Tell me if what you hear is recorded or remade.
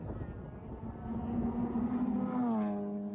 recorded